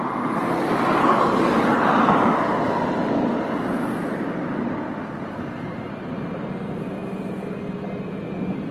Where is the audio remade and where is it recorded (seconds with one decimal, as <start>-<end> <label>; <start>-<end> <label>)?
0.0-8.7 recorded